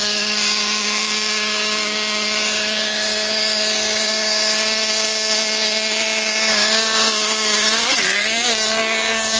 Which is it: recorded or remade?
remade